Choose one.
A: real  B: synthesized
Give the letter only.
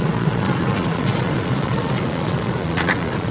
B